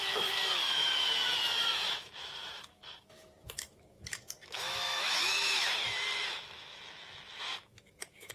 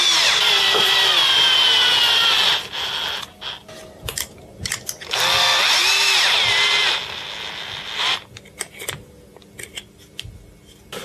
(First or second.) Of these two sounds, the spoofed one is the first